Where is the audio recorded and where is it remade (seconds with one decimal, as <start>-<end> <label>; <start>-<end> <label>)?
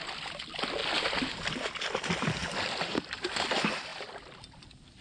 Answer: 0.0-0.8 recorded; 0.8-2.0 remade; 2.0-2.4 recorded; 2.4-3.0 remade; 3.0-5.0 recorded